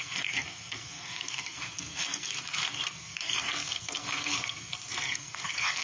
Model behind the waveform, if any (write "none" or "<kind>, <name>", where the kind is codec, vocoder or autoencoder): codec, SNAC